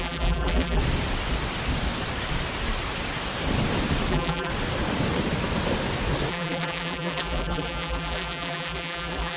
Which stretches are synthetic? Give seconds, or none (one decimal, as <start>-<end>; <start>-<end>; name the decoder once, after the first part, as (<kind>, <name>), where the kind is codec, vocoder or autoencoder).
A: 0.0-0.8 (vocoder, BigVGAN v2); 4.1-4.5; 6.3-9.4